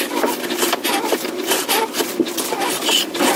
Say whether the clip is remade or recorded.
recorded